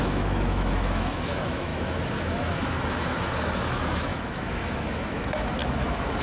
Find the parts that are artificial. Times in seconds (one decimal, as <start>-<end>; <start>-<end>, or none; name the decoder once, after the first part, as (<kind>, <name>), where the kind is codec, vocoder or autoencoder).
0.0-6.2 (autoencoder, DAC-VAE)